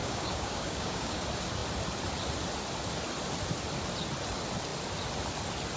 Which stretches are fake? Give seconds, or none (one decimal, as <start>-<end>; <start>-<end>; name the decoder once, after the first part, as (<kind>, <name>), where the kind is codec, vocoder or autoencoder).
0.0-1.2 (codec, DAC)